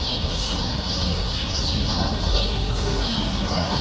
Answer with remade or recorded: remade